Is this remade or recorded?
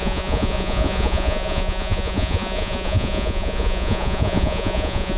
remade